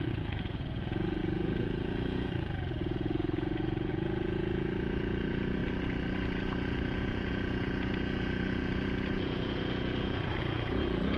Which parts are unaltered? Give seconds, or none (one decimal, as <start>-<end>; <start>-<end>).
5.6-6.4